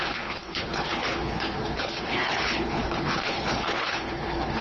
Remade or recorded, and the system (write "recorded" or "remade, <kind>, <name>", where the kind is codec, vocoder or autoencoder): remade, codec, HILCodec